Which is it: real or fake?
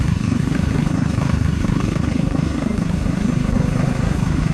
fake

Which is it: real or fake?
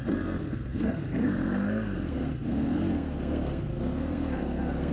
fake